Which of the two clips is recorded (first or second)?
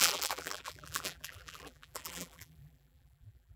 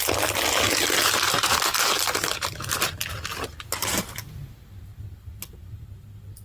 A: second